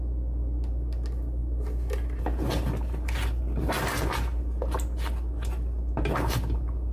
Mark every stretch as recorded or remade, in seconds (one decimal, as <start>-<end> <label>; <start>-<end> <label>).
0.0-6.9 recorded